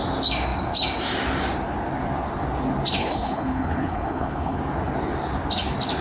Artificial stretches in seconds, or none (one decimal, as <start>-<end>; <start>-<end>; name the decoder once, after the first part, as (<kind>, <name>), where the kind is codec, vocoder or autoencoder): 3.0-4.6 (codec, HILCodec)